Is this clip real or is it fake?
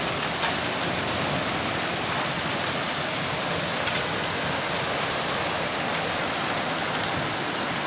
real